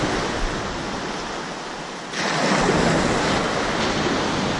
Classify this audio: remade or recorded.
recorded